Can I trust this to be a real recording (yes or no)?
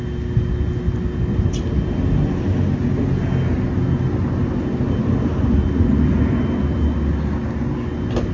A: yes